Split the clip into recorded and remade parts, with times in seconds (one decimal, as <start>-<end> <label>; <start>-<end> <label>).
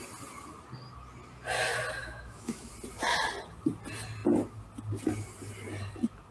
0.0-2.0 recorded; 2.0-2.7 remade; 2.7-6.3 recorded